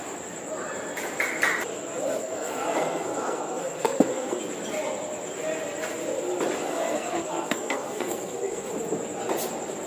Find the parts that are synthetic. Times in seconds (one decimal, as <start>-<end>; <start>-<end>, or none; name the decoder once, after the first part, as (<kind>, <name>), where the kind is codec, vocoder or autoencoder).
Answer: 2.2-4.4 (codec, SNAC); 6.7-8.7